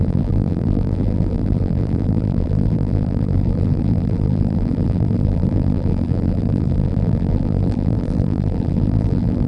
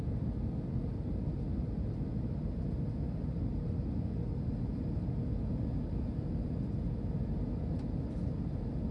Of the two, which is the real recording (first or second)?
second